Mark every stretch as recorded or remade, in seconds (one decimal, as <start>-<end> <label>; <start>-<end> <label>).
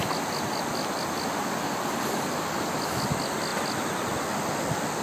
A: 0.0-5.0 recorded